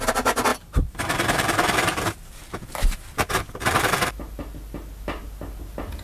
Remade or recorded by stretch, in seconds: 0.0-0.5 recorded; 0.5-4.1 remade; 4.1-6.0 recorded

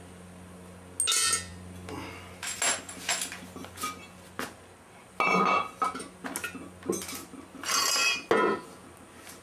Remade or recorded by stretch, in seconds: 0.0-9.4 recorded

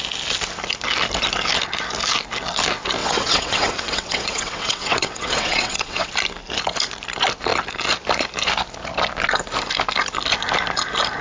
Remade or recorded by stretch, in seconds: 0.0-3.0 recorded; 3.0-6.1 remade; 6.1-11.2 recorded

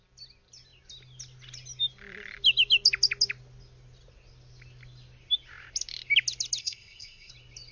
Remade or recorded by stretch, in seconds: 0.0-6.6 recorded; 6.6-7.3 remade; 7.3-7.7 recorded

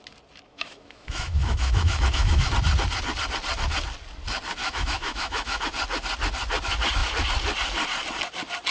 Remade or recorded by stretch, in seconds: 0.0-0.5 recorded; 0.5-2.5 remade; 2.5-4.6 recorded; 4.6-5.6 remade; 5.6-8.7 recorded

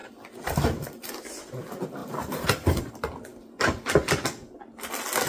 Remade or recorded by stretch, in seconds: 0.0-1.1 remade; 1.1-2.0 recorded; 2.0-2.9 remade; 2.9-3.3 recorded; 3.3-3.9 remade; 3.9-5.3 recorded

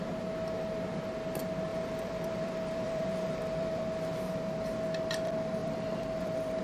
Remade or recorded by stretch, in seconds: 0.0-1.7 recorded; 1.7-3.8 remade; 3.8-5.6 recorded; 5.6-6.6 remade

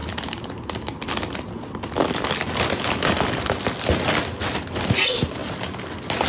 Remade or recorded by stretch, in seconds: 0.0-6.3 recorded